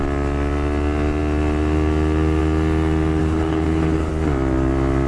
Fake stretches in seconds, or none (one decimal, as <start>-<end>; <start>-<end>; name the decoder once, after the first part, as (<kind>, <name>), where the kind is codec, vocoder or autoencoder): 3.2-4.1 (codec, HILCodec)